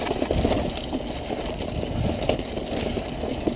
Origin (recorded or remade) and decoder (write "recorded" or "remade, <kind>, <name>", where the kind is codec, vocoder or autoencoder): recorded